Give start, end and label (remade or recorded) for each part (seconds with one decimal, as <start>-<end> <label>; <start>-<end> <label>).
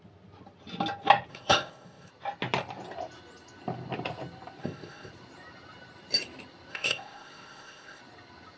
0.0-1.3 recorded; 1.3-2.1 remade; 2.1-4.6 recorded; 4.6-5.1 remade; 5.1-6.7 recorded; 6.7-8.0 remade; 8.0-8.6 recorded